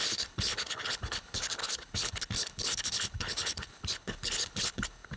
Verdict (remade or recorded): remade